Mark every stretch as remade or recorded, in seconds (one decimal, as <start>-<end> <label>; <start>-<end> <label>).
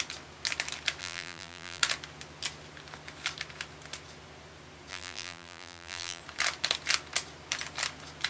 0.0-1.0 recorded; 1.0-1.8 remade; 1.8-4.9 recorded; 4.9-6.2 remade; 6.2-8.3 recorded